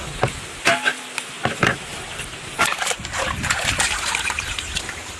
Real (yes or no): yes